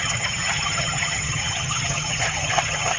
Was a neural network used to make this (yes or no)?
yes